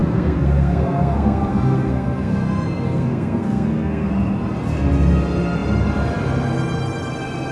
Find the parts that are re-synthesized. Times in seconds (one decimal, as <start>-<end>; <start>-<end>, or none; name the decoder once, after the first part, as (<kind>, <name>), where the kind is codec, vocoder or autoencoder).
0.0-4.1 (codec, SNAC)